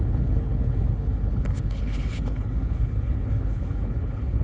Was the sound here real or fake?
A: fake